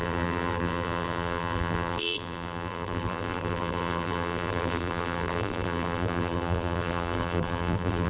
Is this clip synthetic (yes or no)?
yes